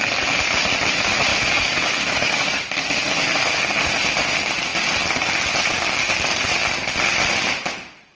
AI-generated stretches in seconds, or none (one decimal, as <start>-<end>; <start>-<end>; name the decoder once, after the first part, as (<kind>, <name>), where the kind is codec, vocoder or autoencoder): 1.3-2.6 (autoencoder, DAC-VAE)